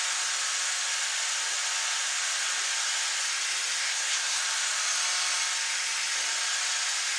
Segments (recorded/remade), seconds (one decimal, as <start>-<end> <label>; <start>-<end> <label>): 0.0-3.8 recorded; 3.8-4.4 remade; 4.4-7.2 recorded